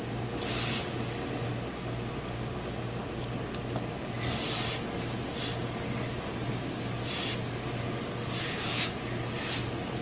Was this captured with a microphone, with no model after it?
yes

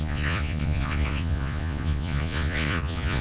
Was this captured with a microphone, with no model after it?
no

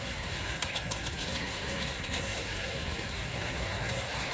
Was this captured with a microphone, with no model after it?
no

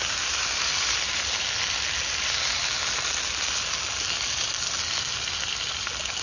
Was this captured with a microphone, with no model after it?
yes